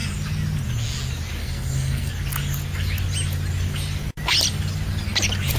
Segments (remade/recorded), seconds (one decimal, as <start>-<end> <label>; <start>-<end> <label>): 0.0-1.4 recorded; 1.4-2.1 remade; 2.1-5.6 recorded